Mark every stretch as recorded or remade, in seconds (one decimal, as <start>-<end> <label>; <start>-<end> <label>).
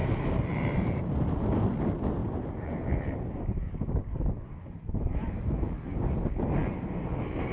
0.0-1.0 remade; 1.0-2.2 recorded; 2.2-5.4 remade; 5.4-7.5 recorded